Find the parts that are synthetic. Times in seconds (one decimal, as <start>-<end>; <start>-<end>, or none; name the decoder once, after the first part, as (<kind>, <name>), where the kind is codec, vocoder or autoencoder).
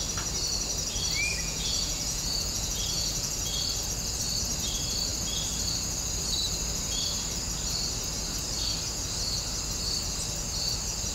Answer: 1.3-3.3 (vocoder, Vocos)